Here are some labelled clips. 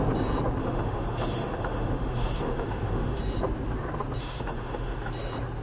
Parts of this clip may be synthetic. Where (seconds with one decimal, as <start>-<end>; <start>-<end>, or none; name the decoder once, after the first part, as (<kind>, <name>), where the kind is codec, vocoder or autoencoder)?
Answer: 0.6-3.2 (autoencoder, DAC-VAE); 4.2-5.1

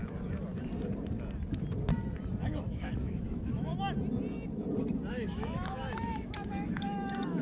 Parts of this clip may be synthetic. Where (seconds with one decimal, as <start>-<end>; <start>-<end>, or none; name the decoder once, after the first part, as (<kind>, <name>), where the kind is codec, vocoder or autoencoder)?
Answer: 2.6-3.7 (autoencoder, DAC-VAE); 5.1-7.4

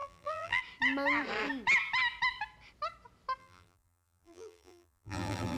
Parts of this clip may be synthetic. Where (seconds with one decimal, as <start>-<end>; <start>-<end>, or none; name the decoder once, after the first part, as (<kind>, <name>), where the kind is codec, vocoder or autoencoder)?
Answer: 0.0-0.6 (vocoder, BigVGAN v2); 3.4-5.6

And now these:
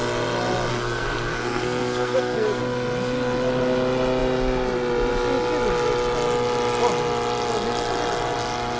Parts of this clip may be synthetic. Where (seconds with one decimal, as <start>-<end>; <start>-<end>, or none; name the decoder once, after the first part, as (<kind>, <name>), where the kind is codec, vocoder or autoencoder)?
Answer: 0.7-2.6 (codec, SNAC)

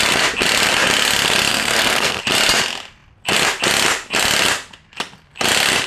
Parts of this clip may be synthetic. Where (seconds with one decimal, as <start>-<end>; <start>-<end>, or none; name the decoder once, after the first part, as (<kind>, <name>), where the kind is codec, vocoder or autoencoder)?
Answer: 1.5-2.2 (codec, SNAC)